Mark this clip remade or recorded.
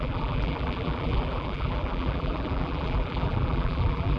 remade